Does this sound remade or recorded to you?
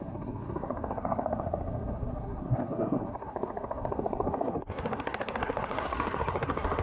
remade